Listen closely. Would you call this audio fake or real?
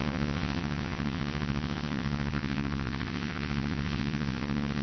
fake